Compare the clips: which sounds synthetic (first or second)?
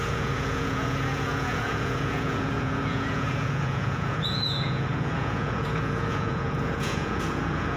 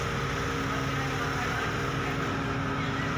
first